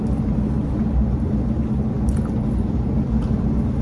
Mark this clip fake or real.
real